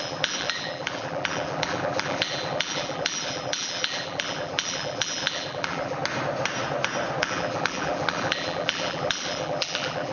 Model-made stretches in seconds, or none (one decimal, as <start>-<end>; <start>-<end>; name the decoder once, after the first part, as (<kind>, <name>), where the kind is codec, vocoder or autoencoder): 0.0-6.0 (vocoder, BigVGAN v2); 7.2-10.1